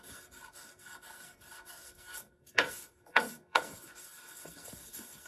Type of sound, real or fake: fake